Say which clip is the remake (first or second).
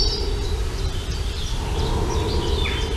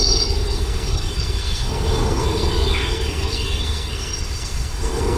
second